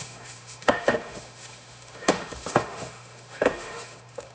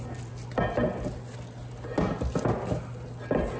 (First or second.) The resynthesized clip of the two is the first